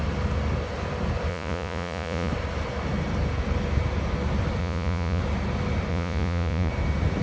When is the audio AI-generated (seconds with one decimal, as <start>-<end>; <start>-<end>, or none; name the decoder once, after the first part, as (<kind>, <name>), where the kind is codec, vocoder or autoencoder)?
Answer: 1.3-2.3 (vocoder, Vocos); 4.6-5.2; 5.9-6.7